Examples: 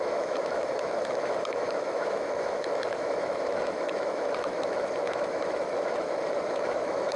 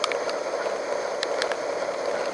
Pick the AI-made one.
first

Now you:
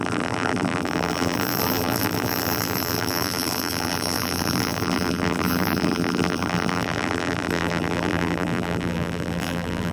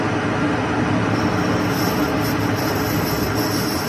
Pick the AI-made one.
first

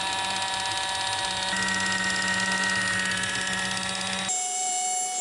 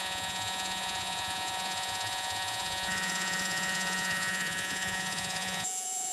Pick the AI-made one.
second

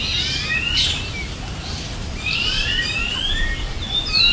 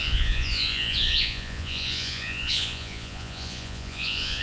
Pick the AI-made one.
second